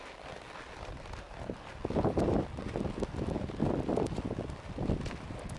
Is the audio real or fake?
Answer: fake